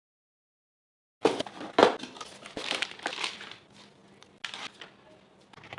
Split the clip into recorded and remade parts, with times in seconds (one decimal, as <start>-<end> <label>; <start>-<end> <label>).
0.0-1.8 recorded; 1.8-3.3 remade; 3.3-5.8 recorded